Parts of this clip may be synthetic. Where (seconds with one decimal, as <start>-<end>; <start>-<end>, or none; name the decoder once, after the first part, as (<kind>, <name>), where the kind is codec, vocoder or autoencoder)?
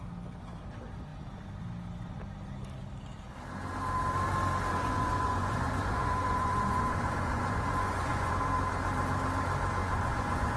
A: 4.7-8.3 (vocoder, Vocos); 9.8-10.6